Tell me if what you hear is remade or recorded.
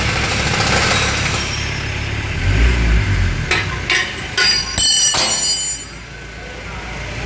recorded